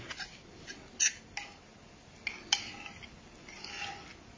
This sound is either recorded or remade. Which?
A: recorded